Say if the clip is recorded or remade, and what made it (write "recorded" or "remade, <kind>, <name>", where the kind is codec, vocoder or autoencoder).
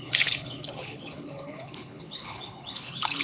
remade, codec, HILCodec